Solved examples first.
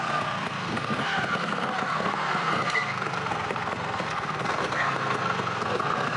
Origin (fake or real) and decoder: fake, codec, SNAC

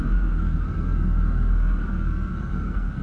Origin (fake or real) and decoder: fake, codec, SNAC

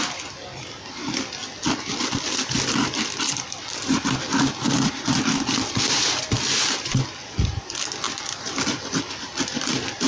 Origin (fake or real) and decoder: real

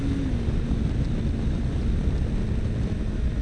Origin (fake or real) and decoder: real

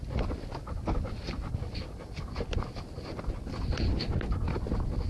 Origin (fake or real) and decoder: real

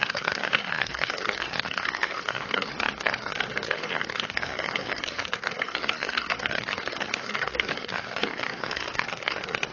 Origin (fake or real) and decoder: fake, codec, SNAC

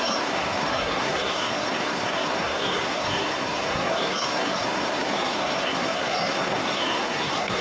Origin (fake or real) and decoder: fake, codec, SNAC